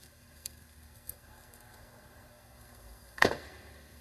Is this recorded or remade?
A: remade